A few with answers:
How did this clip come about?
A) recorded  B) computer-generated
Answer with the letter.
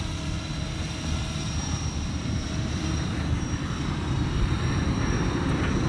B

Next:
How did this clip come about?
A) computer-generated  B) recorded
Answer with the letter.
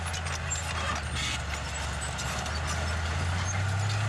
B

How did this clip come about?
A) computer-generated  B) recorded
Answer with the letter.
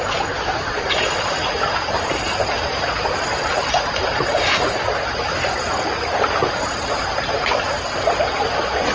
A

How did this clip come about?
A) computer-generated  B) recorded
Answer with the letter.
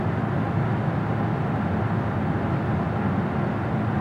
B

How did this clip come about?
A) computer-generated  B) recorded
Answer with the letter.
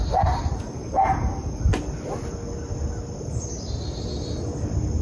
B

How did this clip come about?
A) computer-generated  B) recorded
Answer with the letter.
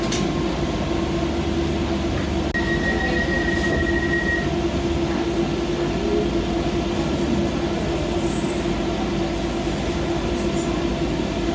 B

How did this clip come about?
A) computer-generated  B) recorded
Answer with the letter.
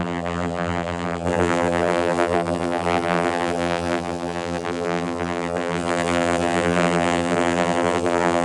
A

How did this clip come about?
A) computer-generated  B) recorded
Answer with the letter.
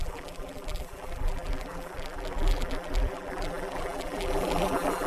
A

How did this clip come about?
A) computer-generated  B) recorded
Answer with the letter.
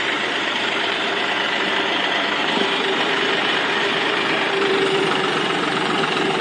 A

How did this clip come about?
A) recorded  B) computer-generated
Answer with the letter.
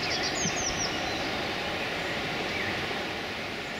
A